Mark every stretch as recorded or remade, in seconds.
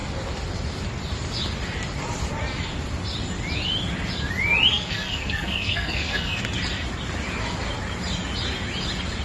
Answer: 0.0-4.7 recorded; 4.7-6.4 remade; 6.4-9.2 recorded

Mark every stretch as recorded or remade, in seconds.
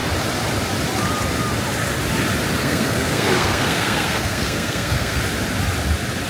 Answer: 0.0-2.6 recorded; 2.6-5.2 remade; 5.2-6.3 recorded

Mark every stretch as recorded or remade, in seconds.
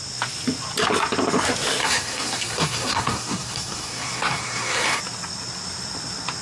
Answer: 0.0-1.8 recorded; 1.8-5.0 remade; 5.0-6.4 recorded